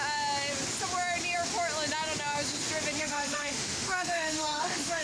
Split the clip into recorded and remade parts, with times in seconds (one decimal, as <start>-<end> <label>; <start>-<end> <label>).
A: 0.0-3.0 recorded; 3.0-5.0 remade